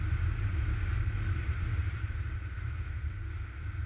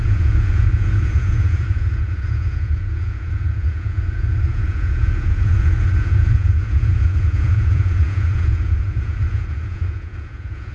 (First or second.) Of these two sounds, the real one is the first